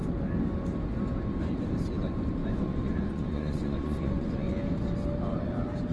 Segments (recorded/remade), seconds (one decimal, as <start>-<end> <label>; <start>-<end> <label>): 0.0-2.4 recorded; 2.4-4.5 remade; 4.5-5.9 recorded